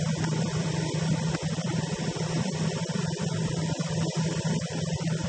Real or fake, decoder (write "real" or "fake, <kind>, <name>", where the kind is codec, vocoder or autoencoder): real